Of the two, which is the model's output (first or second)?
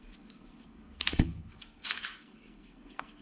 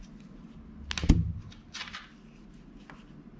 first